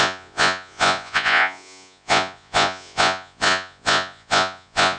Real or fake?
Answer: fake